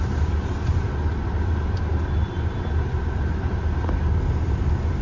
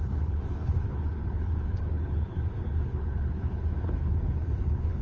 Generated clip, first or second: second